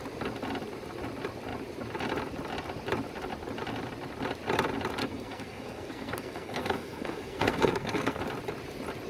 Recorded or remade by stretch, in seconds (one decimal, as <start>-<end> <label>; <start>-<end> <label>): 0.0-5.0 recorded; 5.0-8.2 remade; 8.2-9.1 recorded